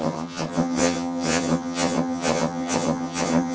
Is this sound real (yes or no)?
no